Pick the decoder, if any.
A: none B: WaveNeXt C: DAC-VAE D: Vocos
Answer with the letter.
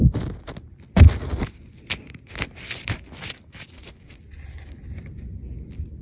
A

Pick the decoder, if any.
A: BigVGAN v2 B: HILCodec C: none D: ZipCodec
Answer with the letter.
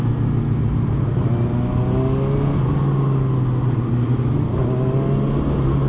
C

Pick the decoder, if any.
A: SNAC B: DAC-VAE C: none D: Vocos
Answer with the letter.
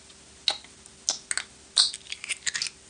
C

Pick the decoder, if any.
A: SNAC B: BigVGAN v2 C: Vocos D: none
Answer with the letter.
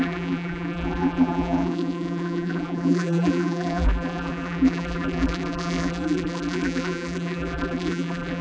B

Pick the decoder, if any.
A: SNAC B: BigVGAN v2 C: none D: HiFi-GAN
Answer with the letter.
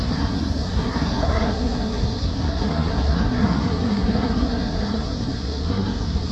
A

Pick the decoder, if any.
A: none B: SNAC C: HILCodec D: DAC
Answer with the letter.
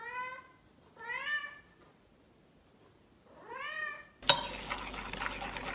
A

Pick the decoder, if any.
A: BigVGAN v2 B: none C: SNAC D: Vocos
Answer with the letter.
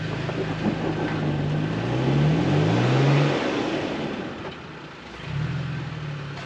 B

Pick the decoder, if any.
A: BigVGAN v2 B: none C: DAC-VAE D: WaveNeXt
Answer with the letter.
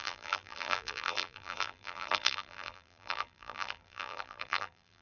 A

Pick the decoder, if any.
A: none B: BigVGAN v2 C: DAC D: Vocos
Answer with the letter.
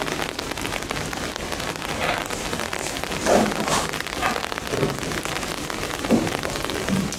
A